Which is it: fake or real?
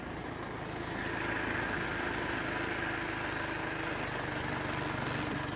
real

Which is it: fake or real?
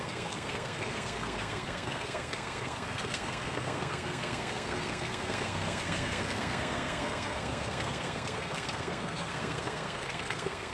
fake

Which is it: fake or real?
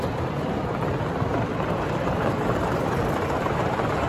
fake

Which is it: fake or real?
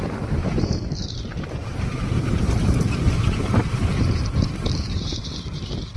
fake